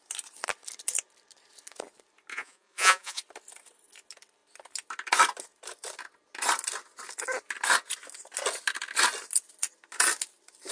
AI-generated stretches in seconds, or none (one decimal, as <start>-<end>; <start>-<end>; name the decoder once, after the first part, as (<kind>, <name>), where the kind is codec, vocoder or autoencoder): 2.3-3.2 (vocoder, Vocos)